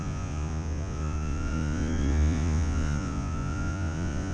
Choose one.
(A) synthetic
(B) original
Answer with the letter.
A